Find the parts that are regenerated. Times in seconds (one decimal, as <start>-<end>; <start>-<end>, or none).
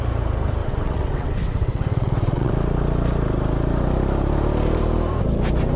0.6-2.5